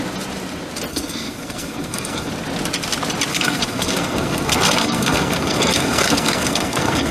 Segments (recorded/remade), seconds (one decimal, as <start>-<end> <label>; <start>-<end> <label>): 0.0-0.9 recorded; 0.9-2.3 remade; 2.3-3.3 recorded; 3.3-7.1 remade

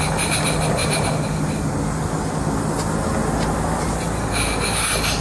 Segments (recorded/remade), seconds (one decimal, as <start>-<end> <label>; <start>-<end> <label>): 0.0-5.2 recorded